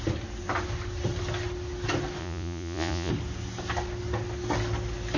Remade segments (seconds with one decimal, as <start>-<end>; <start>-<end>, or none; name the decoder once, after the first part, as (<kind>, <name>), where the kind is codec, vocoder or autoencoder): 2.2-3.1 (vocoder, Vocos)